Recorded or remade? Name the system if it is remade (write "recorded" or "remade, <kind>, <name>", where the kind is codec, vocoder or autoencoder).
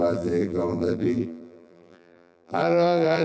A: remade, vocoder, BigVGAN v2